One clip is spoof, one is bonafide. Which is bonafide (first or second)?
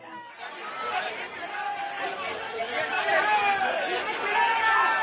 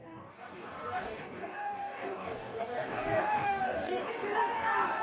first